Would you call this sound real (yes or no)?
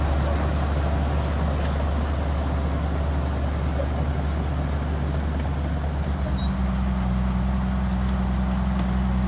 yes